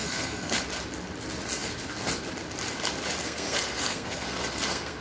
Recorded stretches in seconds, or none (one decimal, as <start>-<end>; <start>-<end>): 0.6-3.2